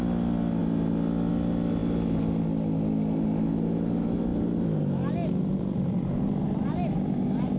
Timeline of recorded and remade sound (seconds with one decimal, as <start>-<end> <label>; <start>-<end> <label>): 0.0-7.6 recorded